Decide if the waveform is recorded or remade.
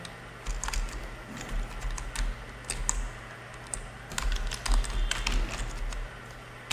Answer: recorded